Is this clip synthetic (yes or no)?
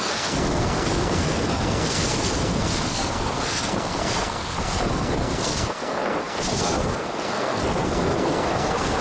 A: yes